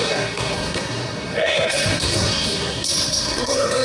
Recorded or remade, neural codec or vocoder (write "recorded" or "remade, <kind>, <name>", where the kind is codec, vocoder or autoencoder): remade, codec, SNAC